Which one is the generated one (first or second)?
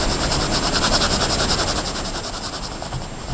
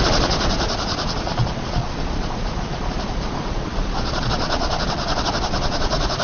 second